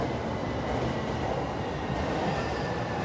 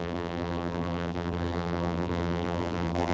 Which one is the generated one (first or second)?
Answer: second